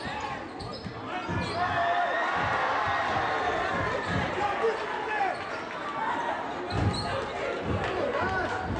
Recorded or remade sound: recorded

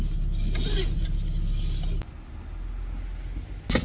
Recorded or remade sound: recorded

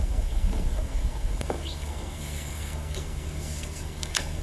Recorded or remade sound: remade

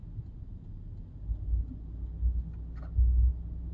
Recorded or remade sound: recorded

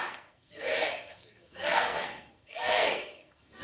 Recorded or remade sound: remade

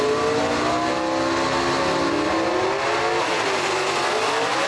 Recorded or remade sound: recorded